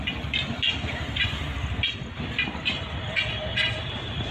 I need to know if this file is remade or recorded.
recorded